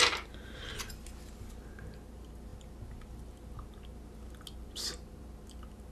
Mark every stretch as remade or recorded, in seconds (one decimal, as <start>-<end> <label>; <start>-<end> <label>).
0.0-5.9 recorded